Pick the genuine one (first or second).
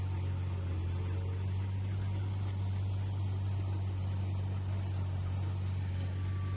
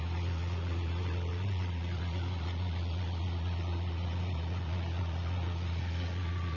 first